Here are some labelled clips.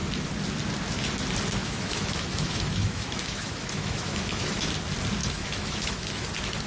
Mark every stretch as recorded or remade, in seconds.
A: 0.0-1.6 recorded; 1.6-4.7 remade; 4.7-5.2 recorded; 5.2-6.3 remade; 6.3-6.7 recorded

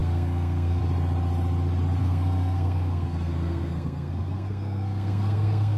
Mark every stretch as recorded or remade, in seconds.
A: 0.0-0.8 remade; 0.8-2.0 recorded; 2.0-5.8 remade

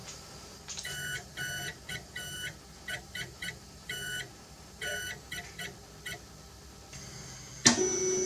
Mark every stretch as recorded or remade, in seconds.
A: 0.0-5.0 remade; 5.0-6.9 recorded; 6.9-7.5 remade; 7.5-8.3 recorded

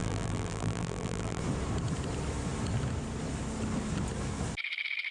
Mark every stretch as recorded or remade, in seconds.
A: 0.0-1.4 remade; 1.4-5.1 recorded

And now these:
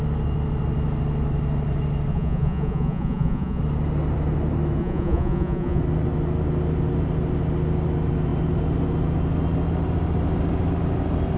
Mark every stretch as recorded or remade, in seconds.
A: 0.0-2.1 recorded; 2.1-3.6 remade; 3.6-4.8 recorded; 4.8-5.8 remade; 5.8-11.4 recorded